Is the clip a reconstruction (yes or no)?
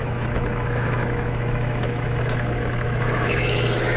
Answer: yes